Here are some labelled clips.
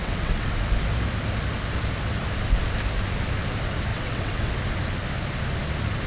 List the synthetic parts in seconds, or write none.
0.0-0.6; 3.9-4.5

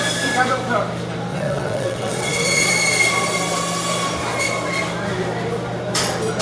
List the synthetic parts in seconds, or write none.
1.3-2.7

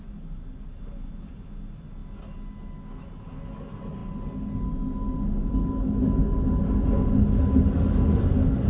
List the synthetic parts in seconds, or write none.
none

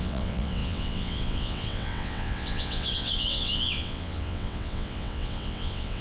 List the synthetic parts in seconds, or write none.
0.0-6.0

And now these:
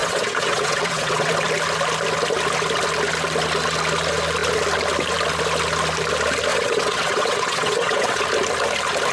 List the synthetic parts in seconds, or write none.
0.0-1.3; 6.5-8.2